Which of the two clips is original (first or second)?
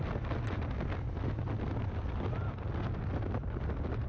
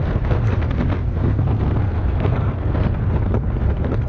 first